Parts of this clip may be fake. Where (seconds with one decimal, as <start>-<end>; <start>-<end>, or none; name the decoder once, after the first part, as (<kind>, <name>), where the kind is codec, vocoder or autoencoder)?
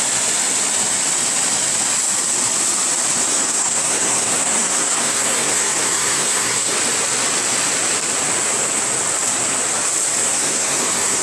3.3-6.7 (codec, SNAC); 10.2-11.2